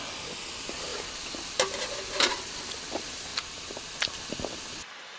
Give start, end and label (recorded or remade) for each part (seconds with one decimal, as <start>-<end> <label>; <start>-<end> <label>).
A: 0.0-5.2 recorded